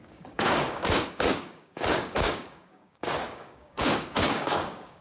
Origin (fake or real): fake